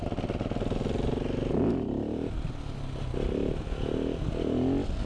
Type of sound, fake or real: real